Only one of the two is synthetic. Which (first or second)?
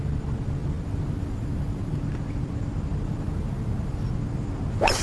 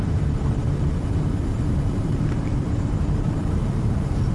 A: second